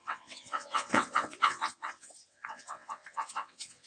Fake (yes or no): yes